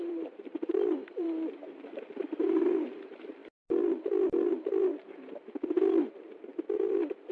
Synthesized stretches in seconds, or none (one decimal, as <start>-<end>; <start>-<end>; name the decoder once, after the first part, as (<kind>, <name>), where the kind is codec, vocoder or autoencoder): 0.0-3.4 (vocoder, BigVGAN v2); 4.5-6.5

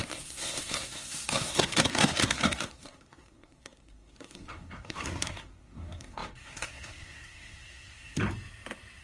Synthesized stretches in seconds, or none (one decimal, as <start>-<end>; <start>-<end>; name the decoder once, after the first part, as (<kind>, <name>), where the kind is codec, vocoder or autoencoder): 0.0-8.2 (codec, SNAC)

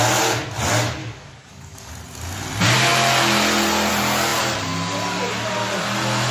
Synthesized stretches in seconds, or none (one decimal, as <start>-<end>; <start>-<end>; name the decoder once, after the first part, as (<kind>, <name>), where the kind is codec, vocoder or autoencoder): 1.0-1.9 (codec, DAC)

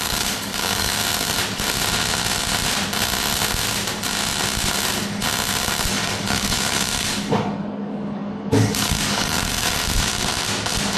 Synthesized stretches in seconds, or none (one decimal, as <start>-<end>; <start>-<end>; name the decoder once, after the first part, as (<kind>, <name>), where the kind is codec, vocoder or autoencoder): 0.0-1.0 (codec, DAC); 5.9-9.8

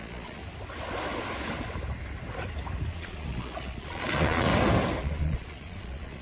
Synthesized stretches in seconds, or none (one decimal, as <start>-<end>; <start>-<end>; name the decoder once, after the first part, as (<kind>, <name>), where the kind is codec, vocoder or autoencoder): 0.0-0.4 (vocoder, Vocos); 2.9-4.5; 5.0-6.2

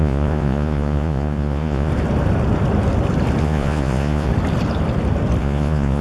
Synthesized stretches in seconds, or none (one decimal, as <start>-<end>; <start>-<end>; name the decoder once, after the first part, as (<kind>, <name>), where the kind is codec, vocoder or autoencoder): 0.0-1.9 (vocoder, Vocos); 3.4-4.3; 5.4-6.0

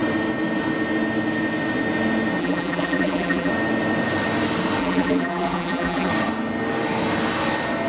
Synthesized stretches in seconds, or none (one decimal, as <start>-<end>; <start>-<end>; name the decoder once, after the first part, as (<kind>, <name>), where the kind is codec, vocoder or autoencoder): 2.4-3.5 (vocoder, BigVGAN v2); 4.8-6.1